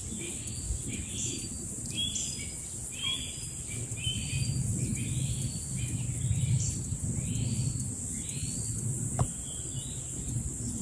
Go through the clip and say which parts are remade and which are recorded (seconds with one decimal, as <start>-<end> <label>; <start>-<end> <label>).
0.0-10.8 recorded